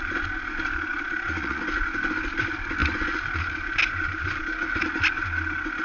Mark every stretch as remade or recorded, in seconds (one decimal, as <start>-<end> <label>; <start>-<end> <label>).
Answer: 0.0-0.9 recorded; 0.9-1.6 remade; 1.6-5.8 recorded